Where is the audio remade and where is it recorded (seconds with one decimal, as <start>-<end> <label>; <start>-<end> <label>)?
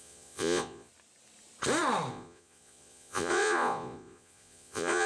0.0-0.9 remade; 0.9-2.1 recorded; 2.1-5.1 remade